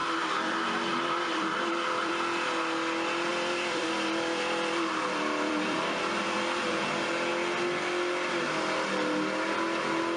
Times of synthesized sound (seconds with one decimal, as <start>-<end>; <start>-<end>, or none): 0.0-2.1; 3.3-6.7